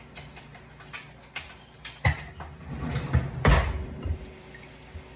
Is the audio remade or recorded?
recorded